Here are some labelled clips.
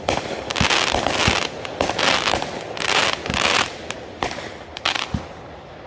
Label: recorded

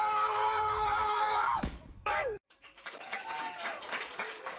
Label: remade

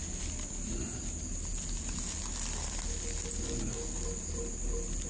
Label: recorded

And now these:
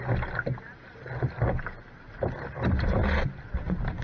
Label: recorded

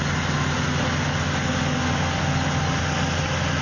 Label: recorded